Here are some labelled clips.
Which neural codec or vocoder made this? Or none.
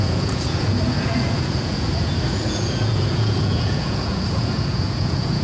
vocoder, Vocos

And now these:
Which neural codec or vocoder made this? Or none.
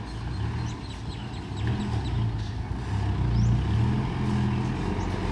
none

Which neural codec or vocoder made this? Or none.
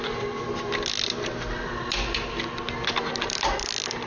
none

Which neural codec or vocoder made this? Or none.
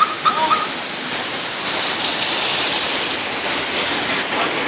none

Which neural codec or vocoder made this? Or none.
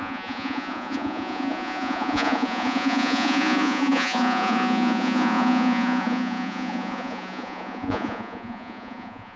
vocoder, Vocos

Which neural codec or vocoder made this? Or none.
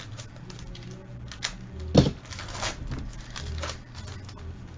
none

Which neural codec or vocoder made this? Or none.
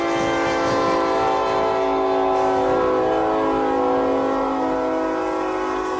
none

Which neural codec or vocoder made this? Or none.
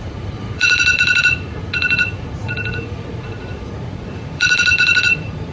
vocoder, Vocos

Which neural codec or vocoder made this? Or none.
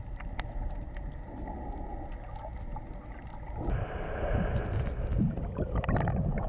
none